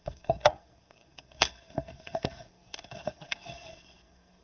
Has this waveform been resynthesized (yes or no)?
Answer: yes